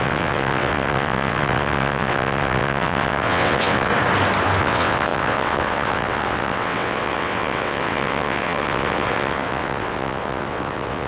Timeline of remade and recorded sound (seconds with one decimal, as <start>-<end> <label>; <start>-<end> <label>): 0.0-3.9 remade; 3.9-4.6 recorded; 4.6-11.1 remade